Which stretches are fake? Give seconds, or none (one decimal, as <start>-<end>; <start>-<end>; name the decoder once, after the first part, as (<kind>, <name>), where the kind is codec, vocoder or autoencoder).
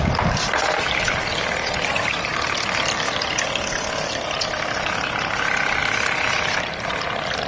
none